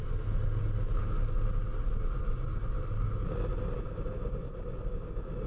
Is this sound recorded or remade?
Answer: recorded